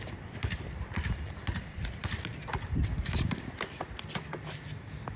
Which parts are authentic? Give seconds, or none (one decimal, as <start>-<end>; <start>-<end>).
0.0-0.4; 3.5-5.2

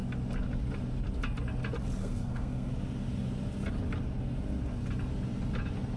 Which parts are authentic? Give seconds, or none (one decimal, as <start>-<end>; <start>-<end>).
0.0-2.0; 2.7-6.0

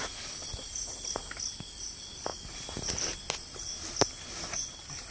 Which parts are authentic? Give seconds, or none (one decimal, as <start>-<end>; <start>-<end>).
0.0-5.1

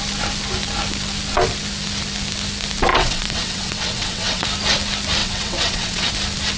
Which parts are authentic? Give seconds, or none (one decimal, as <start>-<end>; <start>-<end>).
0.0-2.9; 4.4-5.2; 6.1-6.6